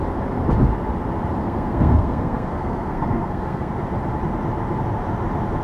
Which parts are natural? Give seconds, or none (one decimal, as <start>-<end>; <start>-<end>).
0.0-1.4; 3.7-5.6